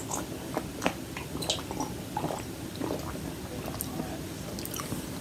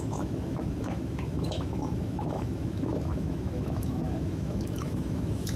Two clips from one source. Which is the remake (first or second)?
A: second